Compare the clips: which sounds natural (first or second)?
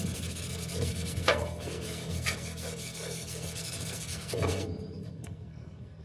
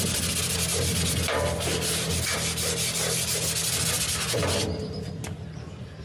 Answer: second